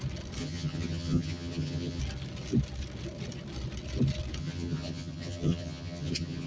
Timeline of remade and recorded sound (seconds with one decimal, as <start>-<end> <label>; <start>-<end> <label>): 0.0-0.4 recorded; 0.4-2.0 remade; 2.0-4.4 recorded; 4.4-6.5 remade